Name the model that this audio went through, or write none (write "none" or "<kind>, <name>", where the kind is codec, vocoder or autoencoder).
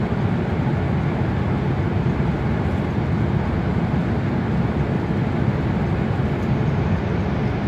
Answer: none